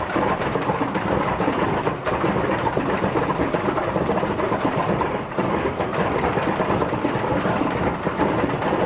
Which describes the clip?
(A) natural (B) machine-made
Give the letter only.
B